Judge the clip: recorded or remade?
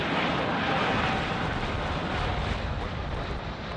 remade